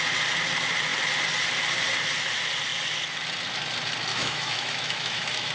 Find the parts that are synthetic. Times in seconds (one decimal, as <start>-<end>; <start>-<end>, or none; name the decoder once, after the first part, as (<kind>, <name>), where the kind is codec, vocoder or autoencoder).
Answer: 4.1-5.5 (autoencoder, DAC-VAE)